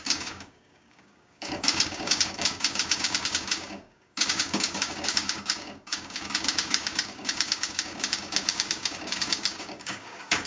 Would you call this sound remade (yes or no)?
yes